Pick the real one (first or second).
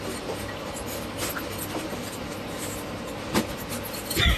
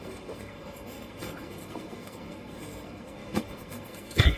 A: first